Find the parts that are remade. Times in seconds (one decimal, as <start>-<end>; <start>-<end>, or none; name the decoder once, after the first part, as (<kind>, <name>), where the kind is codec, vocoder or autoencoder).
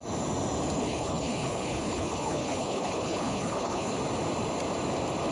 0.8-4.0 (codec, HILCodec)